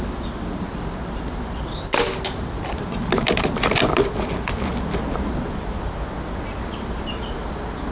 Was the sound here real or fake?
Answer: real